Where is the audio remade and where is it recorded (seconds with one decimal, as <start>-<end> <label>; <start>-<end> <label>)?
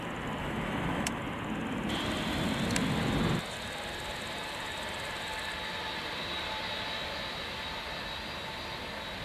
0.0-0.4 recorded; 0.4-1.2 remade; 1.2-9.2 recorded